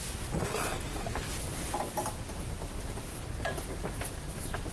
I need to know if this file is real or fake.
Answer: real